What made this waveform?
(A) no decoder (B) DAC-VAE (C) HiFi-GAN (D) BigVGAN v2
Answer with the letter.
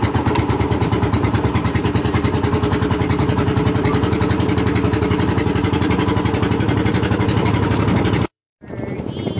D